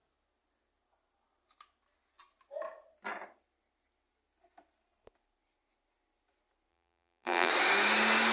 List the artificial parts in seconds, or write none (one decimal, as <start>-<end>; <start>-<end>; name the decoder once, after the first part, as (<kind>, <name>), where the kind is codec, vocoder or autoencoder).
6.7-7.5 (vocoder, BigVGAN v2)